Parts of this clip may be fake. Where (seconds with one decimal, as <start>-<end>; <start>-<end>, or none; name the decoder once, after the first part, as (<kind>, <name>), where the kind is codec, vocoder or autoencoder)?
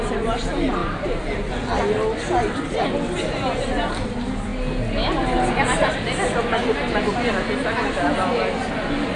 none